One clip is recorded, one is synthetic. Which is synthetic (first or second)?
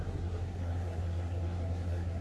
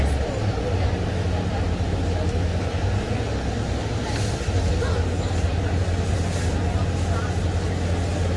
first